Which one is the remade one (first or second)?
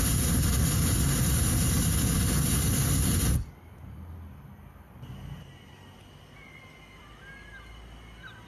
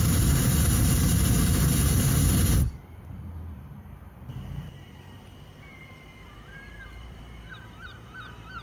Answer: second